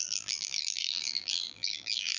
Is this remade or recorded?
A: remade